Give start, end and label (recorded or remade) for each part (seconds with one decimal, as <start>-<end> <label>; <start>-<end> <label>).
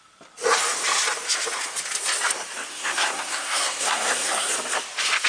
0.0-2.7 recorded; 2.7-4.5 remade; 4.5-5.3 recorded